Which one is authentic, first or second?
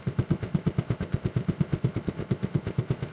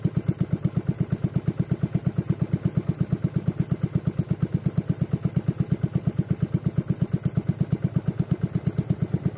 second